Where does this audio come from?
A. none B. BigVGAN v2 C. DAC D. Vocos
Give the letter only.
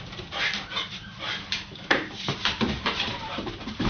B